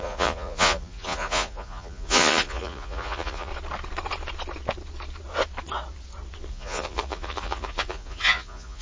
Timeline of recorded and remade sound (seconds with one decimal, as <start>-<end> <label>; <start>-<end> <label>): 0.0-3.5 remade; 3.5-6.5 recorded; 6.5-8.8 remade